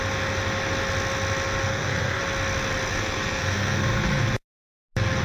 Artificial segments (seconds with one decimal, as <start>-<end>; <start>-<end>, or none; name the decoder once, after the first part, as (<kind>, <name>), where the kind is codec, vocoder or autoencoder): 1.7-2.2 (codec, SNAC); 2.9-4.2